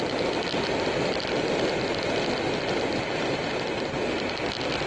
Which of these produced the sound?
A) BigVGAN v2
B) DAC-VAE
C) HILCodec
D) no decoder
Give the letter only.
D